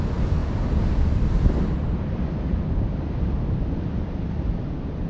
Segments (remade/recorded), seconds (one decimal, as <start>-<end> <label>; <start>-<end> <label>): 0.0-5.1 recorded